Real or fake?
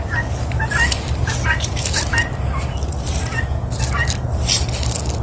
real